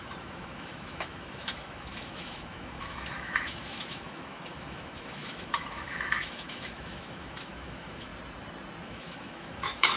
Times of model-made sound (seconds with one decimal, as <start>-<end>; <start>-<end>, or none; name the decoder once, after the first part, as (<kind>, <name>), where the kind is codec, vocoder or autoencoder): 0.0-8.1 (autoencoder, DAC-VAE); 8.8-10.0